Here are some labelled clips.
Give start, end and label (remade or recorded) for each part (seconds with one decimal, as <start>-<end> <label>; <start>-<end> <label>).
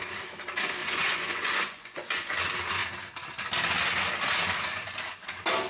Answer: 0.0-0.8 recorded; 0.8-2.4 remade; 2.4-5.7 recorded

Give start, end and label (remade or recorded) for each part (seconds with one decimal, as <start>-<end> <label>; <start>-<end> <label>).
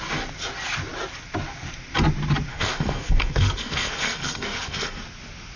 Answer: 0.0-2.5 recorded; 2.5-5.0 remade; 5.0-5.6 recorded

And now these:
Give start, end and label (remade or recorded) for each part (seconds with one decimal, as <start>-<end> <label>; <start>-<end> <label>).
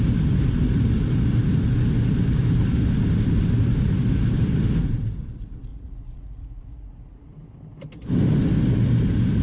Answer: 0.0-5.7 recorded; 5.7-6.9 remade; 6.9-9.4 recorded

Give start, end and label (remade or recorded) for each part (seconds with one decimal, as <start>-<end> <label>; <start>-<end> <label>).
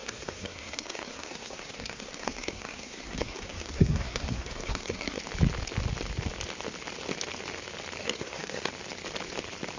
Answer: 0.0-5.2 remade; 5.2-8.0 recorded; 8.0-8.7 remade; 8.7-9.8 recorded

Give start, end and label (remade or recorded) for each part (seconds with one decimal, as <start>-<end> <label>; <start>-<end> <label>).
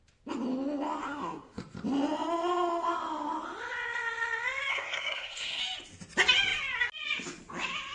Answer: 0.0-1.0 recorded; 1.0-1.6 remade; 1.6-4.7 recorded; 4.7-5.6 remade; 5.6-7.9 recorded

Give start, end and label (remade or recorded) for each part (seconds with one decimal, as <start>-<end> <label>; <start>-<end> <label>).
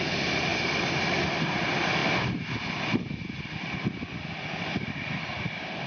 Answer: 0.0-2.0 remade; 2.0-4.3 recorded; 4.3-5.9 remade